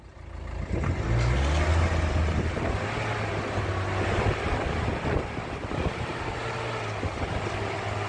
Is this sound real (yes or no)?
yes